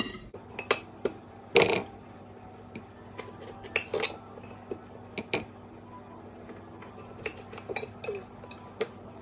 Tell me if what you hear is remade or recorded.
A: recorded